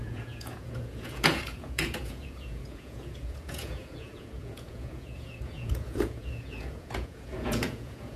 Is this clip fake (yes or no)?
yes